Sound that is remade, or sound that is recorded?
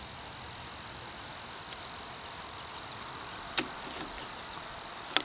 recorded